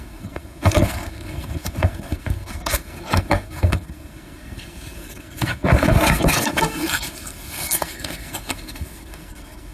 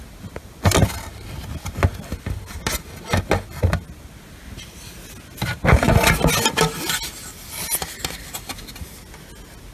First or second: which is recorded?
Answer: second